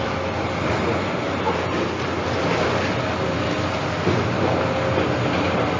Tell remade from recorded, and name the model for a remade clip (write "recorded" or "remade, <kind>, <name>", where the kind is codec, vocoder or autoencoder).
recorded